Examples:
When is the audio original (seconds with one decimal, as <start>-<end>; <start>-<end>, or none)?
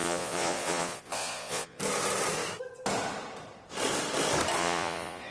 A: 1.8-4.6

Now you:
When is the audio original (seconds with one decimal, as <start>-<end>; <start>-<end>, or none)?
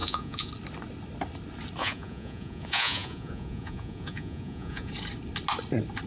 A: 0.5-1.8; 4.9-6.1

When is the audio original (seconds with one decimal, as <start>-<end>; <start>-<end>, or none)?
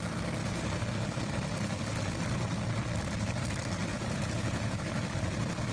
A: 0.0-3.9; 4.8-5.7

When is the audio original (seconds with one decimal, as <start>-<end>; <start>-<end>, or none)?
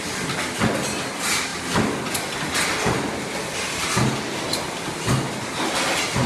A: 0.0-6.3